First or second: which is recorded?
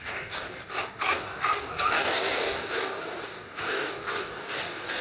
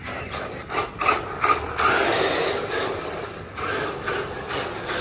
second